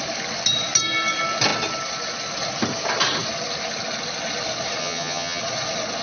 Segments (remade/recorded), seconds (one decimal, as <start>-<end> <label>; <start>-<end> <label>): 0.0-4.8 recorded; 4.8-5.4 remade; 5.4-6.0 recorded